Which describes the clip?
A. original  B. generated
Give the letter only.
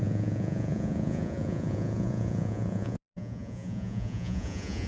B